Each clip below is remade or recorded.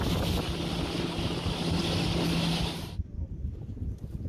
recorded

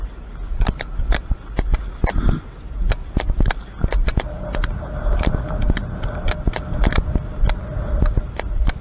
recorded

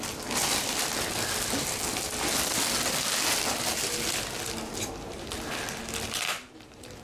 recorded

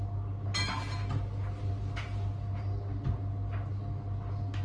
recorded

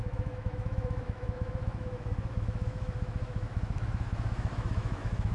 remade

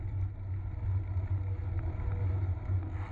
recorded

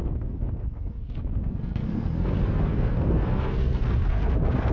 remade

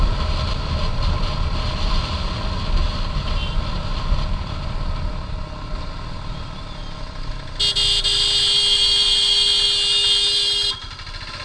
recorded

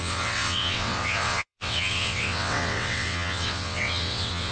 remade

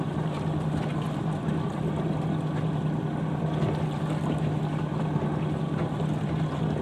recorded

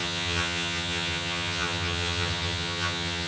remade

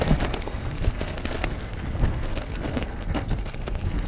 remade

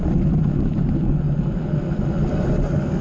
recorded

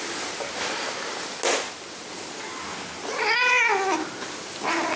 recorded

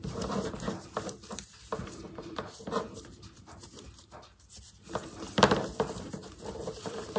remade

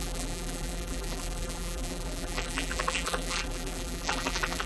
remade